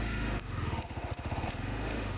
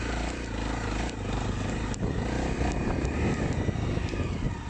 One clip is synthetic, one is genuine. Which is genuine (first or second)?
second